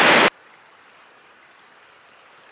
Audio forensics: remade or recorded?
remade